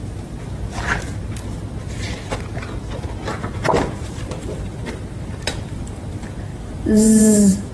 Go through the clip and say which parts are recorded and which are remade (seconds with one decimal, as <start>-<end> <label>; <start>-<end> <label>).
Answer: 0.0-3.3 recorded; 3.3-6.1 remade; 6.1-6.5 recorded; 6.5-7.7 remade